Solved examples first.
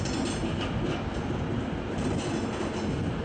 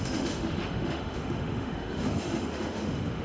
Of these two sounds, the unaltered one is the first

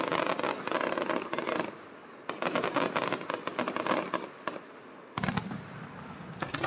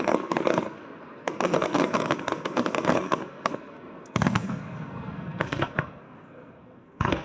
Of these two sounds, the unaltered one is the first